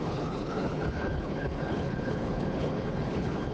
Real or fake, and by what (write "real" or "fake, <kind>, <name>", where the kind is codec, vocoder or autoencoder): fake, codec, HILCodec